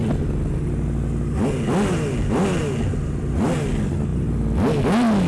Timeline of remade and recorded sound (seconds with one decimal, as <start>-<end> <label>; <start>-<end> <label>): 0.0-5.3 recorded